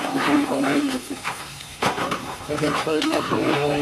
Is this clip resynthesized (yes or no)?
yes